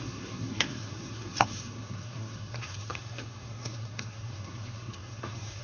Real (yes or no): no